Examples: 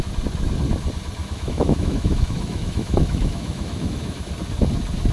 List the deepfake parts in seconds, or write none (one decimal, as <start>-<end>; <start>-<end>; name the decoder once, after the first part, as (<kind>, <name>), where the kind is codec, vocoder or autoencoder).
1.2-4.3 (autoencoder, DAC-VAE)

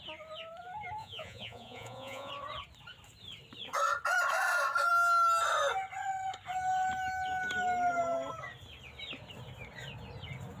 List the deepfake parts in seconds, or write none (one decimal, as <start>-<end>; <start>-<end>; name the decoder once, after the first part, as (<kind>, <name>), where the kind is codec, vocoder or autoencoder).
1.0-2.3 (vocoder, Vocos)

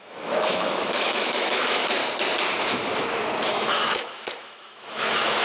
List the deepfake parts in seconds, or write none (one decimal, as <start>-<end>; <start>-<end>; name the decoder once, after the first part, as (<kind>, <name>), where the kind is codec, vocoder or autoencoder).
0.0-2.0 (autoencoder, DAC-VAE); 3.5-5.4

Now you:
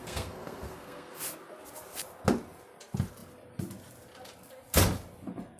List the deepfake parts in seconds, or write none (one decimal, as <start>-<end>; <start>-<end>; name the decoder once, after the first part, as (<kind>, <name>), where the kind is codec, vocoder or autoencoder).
0.0-1.2 (codec, SNAC)

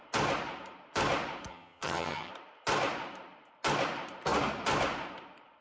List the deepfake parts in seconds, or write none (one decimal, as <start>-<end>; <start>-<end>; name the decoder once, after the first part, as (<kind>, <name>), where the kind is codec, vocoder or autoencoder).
1.5-2.3 (vocoder, HiFi-GAN)

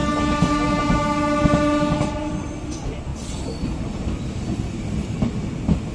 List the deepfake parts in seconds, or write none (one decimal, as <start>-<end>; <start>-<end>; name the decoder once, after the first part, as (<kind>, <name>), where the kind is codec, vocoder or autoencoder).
none

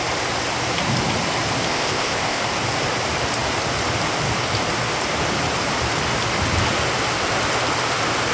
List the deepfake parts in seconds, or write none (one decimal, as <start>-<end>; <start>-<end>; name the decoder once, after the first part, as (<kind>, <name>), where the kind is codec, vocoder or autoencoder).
1.7-2.4 (codec, ZipCodec)